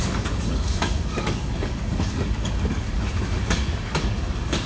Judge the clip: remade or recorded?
remade